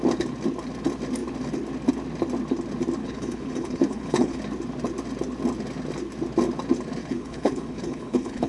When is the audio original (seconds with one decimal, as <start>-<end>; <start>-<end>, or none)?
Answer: 0.0-3.0; 4.4-7.0